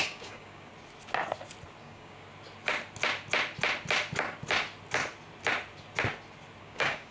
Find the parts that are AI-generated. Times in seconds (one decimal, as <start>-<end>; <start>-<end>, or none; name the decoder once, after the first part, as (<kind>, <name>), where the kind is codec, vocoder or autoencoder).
0.0-0.7 (codec, DAC); 1.8-2.3; 6.6-7.1